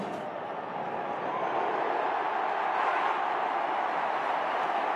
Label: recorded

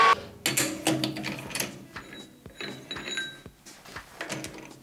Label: recorded